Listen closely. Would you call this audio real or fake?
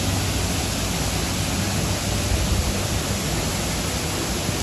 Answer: real